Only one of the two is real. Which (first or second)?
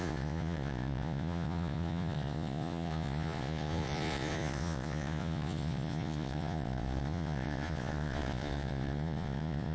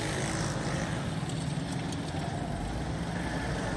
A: second